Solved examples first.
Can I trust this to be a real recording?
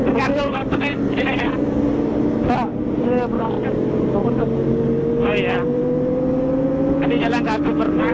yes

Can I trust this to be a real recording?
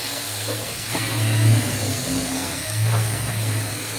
no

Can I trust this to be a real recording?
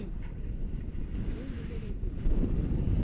no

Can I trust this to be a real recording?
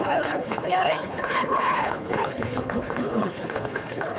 no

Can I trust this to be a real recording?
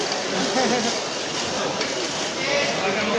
yes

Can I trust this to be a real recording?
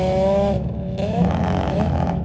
no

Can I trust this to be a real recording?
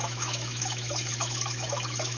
no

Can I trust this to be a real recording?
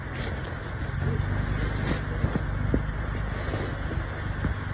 yes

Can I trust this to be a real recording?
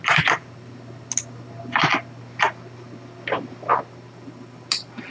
yes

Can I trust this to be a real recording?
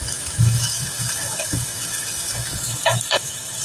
no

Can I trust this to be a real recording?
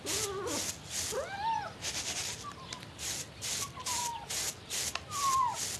yes